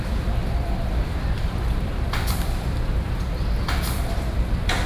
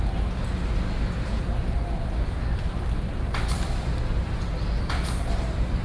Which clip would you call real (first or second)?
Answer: second